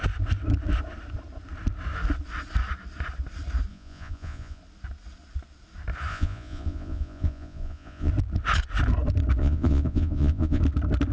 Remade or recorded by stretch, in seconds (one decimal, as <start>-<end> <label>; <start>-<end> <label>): 0.0-3.7 recorded; 3.7-4.6 remade; 4.6-6.1 recorded; 6.1-8.1 remade; 8.1-9.4 recorded; 9.4-10.6 remade; 10.6-11.1 recorded